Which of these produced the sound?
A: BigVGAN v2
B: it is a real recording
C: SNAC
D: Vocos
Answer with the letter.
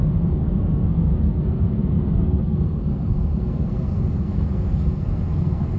C